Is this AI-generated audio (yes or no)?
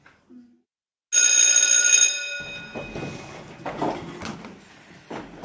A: no